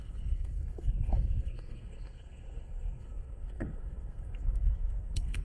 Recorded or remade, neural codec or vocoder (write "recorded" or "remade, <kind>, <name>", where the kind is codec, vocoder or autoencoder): remade, codec, SNAC